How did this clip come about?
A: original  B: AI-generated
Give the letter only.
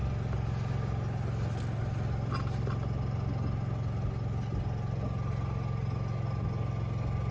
A